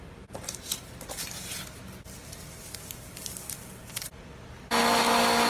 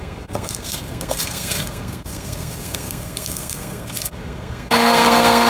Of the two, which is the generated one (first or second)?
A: second